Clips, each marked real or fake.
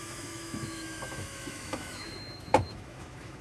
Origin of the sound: fake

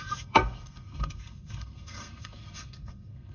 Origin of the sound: fake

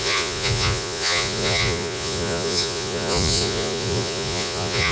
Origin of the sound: fake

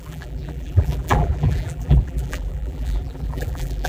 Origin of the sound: fake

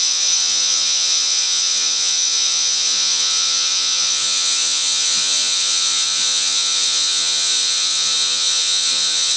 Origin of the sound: fake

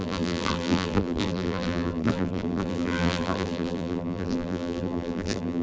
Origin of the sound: fake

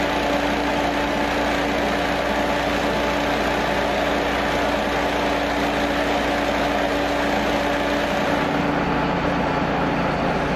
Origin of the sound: real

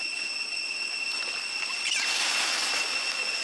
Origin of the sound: real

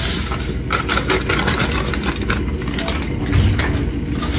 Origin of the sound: real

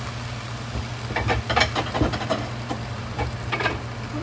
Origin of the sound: real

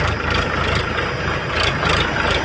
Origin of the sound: real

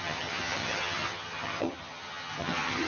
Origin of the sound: fake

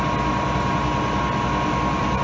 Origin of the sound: real